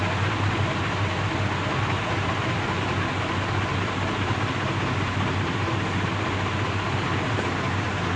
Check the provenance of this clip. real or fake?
real